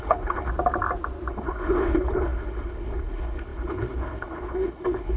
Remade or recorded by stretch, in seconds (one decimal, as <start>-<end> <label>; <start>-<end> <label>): 0.0-0.5 remade; 0.5-1.3 recorded; 1.3-5.2 remade

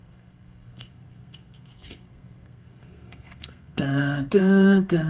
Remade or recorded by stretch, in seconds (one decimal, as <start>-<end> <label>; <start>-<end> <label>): 0.0-5.1 remade

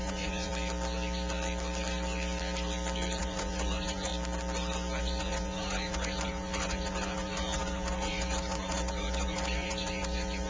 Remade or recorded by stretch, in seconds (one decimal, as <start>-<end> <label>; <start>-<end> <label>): 0.0-0.5 remade; 0.5-3.2 recorded; 3.2-4.1 remade; 4.1-5.0 recorded; 5.0-10.5 remade

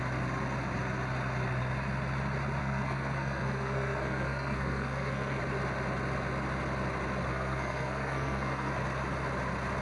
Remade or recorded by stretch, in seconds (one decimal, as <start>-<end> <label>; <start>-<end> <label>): 0.0-2.6 recorded; 2.6-5.4 remade; 5.4-7.3 recorded; 7.3-8.7 remade; 8.7-9.8 recorded

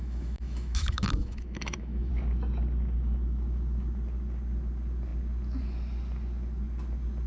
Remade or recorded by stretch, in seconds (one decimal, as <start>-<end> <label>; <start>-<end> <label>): 0.0-2.1 remade; 2.1-7.3 recorded

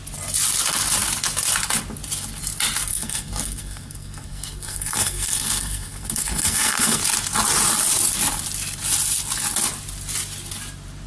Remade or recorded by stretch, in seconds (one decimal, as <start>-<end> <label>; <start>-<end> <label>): 0.0-2.9 recorded; 2.9-7.0 remade; 7.0-11.1 recorded